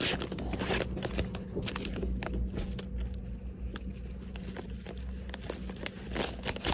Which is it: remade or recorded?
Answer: recorded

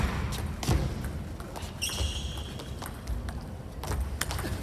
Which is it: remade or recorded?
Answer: recorded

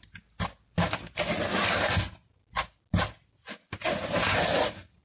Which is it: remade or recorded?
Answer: recorded